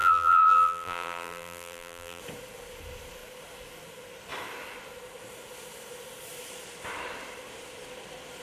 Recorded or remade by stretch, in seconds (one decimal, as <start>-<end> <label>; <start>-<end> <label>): 0.0-2.2 remade; 2.2-8.4 recorded